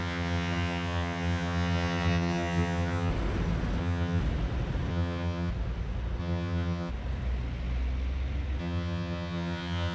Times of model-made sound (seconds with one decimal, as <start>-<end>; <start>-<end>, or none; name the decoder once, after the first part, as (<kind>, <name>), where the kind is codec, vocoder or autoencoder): 0.0-3.1 (vocoder, HiFi-GAN); 3.8-4.2; 4.9-5.5; 6.2-6.9; 8.6-9.9